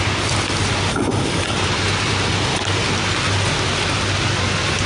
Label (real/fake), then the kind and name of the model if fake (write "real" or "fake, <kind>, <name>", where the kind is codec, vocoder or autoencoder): real